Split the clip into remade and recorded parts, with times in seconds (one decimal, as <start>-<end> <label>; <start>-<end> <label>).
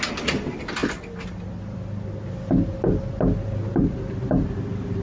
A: 0.0-5.0 recorded